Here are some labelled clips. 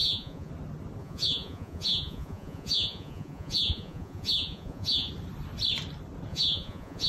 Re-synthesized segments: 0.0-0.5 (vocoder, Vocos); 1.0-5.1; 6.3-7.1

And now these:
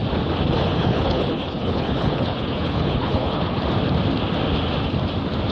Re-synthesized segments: 0.5-3.6 (codec, HILCodec)

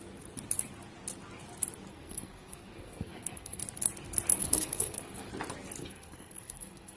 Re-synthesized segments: 1.9-3.6 (codec, SNAC); 4.3-5.3; 5.8-7.0